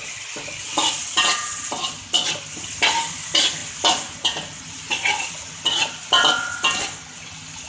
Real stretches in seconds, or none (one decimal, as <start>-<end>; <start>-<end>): 0.0-7.7